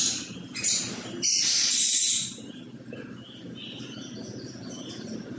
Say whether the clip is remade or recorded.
recorded